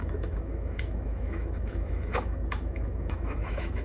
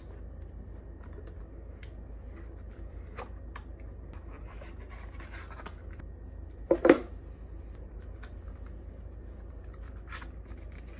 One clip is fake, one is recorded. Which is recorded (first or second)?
second